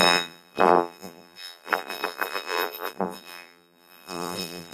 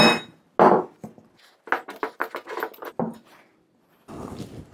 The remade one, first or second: first